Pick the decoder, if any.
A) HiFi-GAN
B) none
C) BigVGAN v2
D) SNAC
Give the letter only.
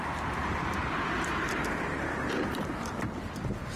C